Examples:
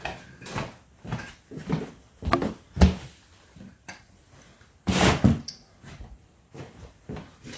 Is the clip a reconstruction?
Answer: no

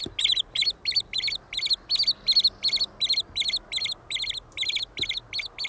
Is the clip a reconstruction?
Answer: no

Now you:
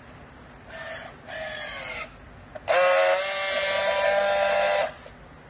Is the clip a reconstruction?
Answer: no